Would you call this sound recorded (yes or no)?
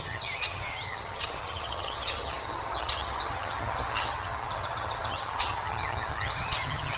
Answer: no